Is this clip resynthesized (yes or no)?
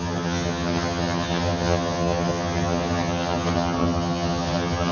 yes